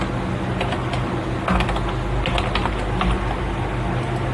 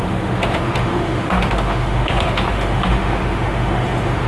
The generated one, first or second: second